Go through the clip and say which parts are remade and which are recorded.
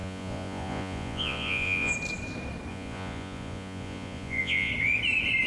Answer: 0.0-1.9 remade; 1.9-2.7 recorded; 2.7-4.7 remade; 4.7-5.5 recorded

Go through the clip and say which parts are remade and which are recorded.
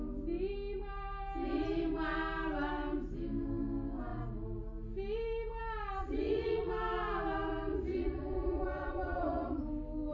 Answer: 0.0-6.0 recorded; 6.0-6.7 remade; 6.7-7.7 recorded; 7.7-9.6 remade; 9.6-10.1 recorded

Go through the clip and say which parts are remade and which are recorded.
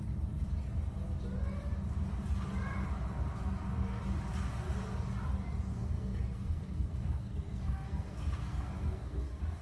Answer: 0.0-5.7 recorded; 5.7-9.6 remade